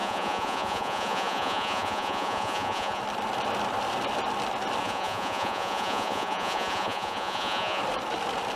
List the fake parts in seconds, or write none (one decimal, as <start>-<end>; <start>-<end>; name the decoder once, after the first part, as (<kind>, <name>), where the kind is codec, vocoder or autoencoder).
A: 0.0-3.0 (vocoder, Vocos); 4.8-7.8